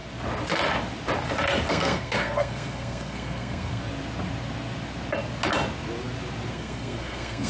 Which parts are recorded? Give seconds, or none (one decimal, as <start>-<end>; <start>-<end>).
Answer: 0.0-1.7; 3.8-6.5